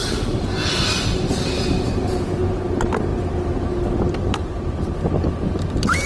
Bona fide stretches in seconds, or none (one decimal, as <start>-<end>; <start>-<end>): 0.0-6.1